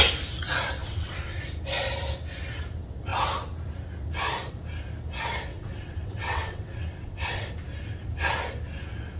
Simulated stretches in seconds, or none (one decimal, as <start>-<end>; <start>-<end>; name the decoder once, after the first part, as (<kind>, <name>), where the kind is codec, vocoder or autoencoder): 0.8-1.4 (vocoder, WaveNeXt); 5.5-7.5